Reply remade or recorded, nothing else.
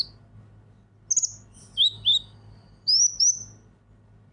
recorded